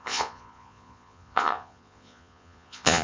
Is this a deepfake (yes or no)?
yes